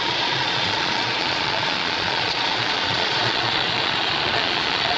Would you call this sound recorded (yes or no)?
no